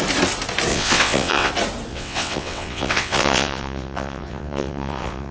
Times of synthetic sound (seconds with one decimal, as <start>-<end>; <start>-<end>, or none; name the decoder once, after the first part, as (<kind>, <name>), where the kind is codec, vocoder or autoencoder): 0.7-1.5 (vocoder, WaveNeXt); 1.9-5.3